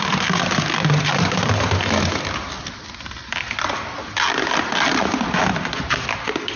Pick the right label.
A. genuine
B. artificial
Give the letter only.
A